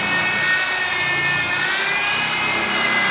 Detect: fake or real real